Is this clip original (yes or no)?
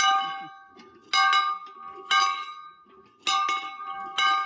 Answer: yes